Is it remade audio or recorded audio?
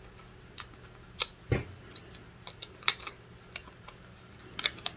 recorded